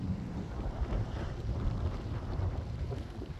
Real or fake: fake